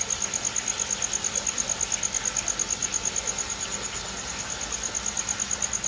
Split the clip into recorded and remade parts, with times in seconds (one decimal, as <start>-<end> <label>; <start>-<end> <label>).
0.0-5.9 recorded